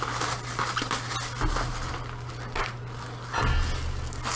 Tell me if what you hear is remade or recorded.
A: recorded